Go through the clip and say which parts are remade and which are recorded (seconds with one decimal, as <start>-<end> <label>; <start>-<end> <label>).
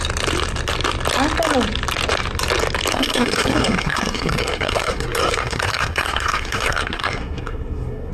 0.0-2.9 recorded; 2.9-8.1 remade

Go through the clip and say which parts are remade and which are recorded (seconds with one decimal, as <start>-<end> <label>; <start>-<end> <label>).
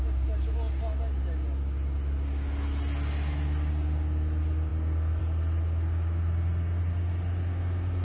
0.0-8.0 recorded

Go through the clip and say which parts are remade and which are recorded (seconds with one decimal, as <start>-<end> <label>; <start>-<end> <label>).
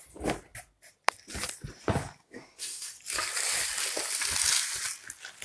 0.0-2.2 recorded; 2.2-3.0 remade; 3.0-5.4 recorded